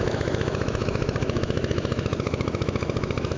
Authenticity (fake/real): fake